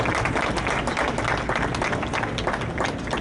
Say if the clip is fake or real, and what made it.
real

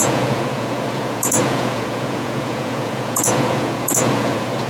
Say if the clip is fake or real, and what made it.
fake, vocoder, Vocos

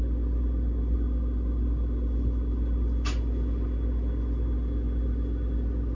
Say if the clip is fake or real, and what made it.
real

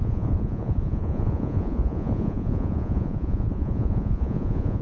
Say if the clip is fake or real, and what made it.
fake, vocoder, Vocos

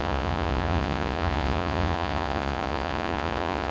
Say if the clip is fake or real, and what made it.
fake, vocoder, Vocos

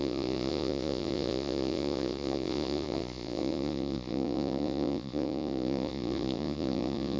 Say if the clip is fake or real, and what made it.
fake, vocoder, Vocos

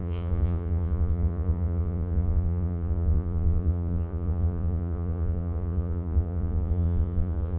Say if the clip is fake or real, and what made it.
fake, vocoder, Vocos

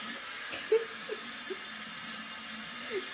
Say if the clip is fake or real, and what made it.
real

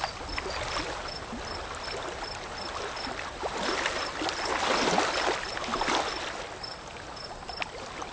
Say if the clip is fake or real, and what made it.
real